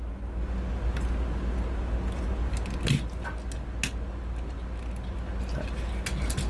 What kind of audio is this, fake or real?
real